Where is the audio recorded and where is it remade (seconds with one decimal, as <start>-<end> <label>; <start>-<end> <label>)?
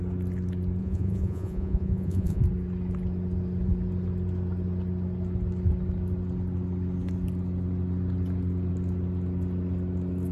0.0-0.8 recorded; 0.8-2.4 remade; 2.4-10.3 recorded